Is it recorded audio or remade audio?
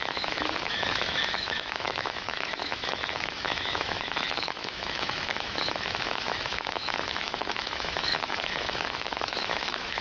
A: remade